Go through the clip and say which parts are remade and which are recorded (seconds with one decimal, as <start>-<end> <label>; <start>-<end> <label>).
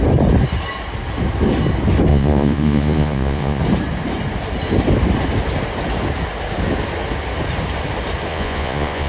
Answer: 0.0-2.1 recorded; 2.1-3.6 remade; 3.6-8.3 recorded; 8.3-9.1 remade